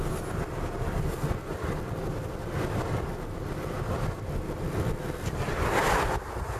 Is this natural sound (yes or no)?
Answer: yes